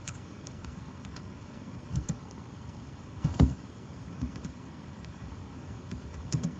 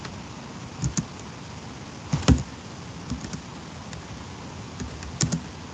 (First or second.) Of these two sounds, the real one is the second